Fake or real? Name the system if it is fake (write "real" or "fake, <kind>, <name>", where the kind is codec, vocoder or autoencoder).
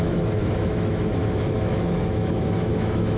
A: fake, autoencoder, DAC-VAE